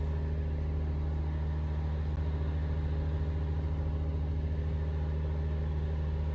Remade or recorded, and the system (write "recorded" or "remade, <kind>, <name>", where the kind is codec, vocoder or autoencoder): recorded